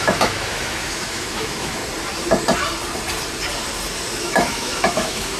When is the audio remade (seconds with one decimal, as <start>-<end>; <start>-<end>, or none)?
0.0-1.8; 4.2-5.4

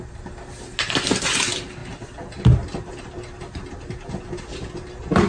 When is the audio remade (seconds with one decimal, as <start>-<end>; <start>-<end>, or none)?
none

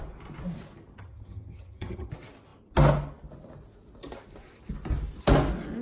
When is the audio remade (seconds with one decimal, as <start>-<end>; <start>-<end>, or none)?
1.0-2.1